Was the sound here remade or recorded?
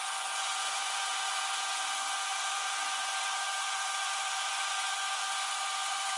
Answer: remade